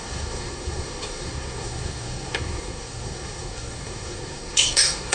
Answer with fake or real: fake